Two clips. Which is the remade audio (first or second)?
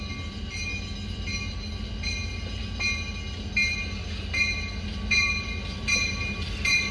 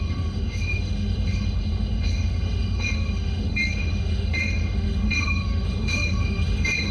second